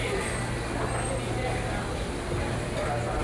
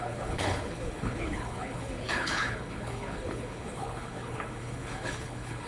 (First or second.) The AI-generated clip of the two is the second